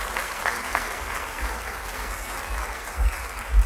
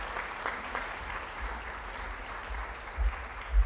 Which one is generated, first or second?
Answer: first